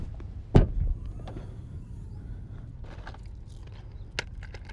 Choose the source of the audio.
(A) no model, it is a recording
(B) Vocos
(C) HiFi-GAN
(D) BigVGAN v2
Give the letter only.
A